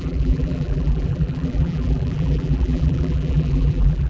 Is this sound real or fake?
fake